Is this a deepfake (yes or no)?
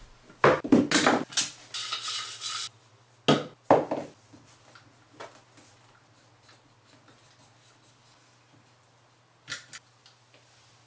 no